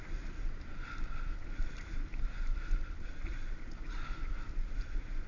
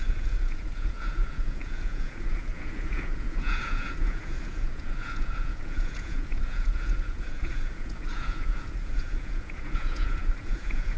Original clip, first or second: first